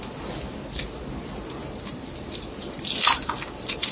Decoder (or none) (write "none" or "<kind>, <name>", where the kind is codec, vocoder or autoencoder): vocoder, BigVGAN v2